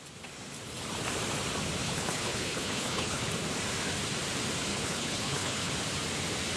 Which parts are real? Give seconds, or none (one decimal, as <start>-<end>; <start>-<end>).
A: 0.0-1.8; 3.3-4.7; 5.7-6.6